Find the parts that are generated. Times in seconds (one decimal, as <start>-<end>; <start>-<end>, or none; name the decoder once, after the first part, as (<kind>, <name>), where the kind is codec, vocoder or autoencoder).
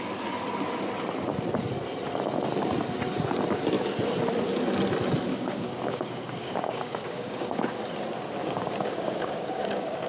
5.3-7.8 (codec, DAC); 8.4-10.1